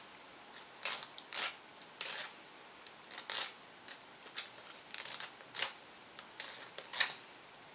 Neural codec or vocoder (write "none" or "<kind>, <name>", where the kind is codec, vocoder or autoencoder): none